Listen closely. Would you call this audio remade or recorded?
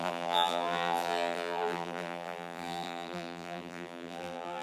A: remade